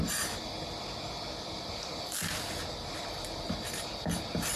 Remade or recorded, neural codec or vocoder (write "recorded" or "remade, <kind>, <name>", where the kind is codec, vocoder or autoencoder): recorded